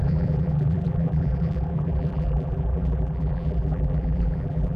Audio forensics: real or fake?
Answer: fake